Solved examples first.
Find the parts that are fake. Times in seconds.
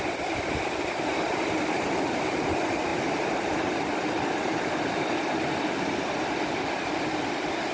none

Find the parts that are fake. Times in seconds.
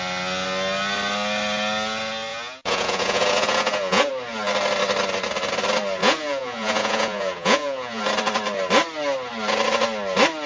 2.3-4.1 (vocoder, Vocos); 6.0-8.0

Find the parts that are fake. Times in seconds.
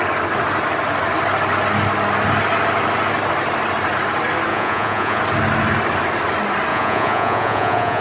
4.5-5.2 (vocoder, Vocos); 6.7-8.0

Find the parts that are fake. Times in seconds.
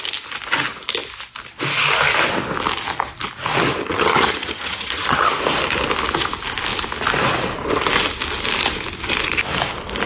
3.8-5.3 (vocoder, HiFi-GAN)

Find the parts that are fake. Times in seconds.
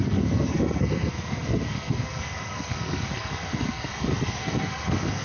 0.0-5.2 (codec, SNAC)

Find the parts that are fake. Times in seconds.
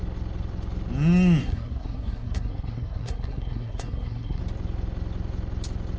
1.4-4.4 (codec, SNAC)